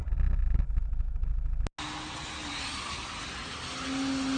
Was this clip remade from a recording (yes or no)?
no